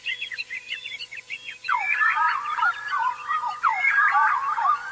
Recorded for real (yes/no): no